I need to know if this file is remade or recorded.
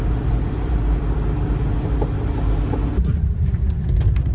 recorded